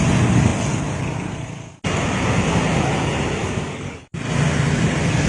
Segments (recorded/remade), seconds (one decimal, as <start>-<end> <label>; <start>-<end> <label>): 0.0-3.4 recorded; 3.4-4.0 remade; 4.0-5.3 recorded